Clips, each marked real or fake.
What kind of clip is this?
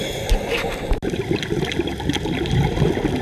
real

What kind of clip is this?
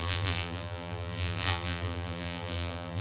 fake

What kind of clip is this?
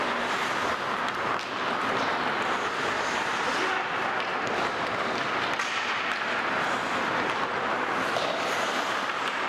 real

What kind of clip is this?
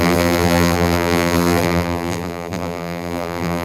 fake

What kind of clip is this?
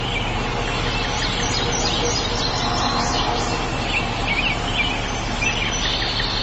real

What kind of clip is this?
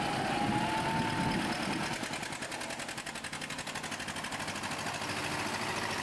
real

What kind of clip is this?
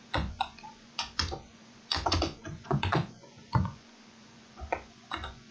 fake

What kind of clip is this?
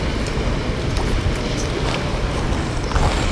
real